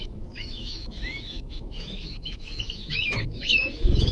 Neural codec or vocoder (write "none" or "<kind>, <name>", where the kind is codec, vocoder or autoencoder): autoencoder, DAC-VAE